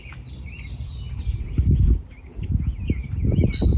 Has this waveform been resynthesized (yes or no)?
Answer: no